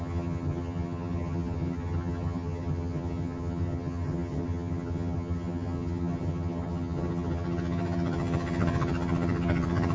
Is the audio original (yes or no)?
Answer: no